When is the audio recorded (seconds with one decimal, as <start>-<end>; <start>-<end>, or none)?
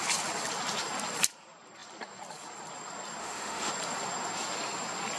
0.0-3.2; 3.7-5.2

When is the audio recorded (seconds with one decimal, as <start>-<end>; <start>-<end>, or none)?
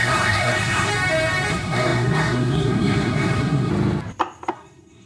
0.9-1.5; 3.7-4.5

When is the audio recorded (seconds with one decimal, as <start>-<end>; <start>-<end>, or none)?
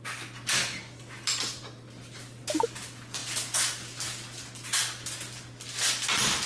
0.0-6.5